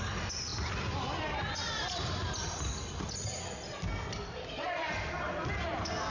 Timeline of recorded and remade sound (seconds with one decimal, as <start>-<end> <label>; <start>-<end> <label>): 0.0-6.1 recorded